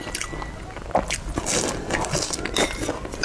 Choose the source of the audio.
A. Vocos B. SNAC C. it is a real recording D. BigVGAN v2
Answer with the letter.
C